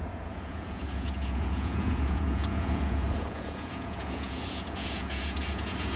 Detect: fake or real fake